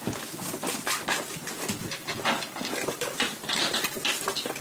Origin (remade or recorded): recorded